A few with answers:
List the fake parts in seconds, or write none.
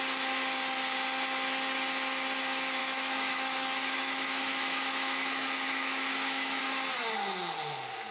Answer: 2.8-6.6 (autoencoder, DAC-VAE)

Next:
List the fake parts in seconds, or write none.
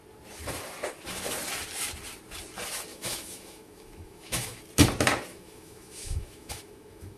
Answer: 2.9-4.6 (autoencoder, DAC-VAE); 5.3-7.2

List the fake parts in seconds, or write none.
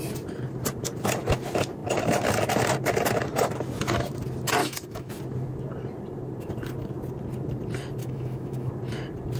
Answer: 4.6-5.1 (autoencoder, DAC-VAE); 8.0-8.7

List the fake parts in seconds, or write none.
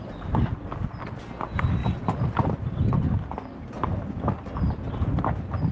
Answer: none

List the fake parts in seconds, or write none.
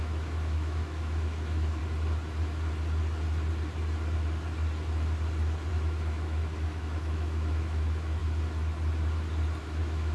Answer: 0.0-1.8 (autoencoder, DAC-VAE); 5.7-8.2; 9.6-10.1